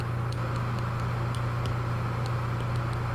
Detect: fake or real real